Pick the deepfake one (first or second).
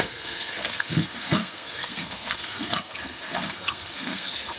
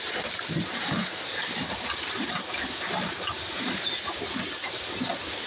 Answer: first